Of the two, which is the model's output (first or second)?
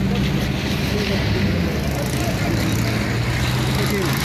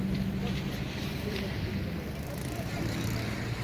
second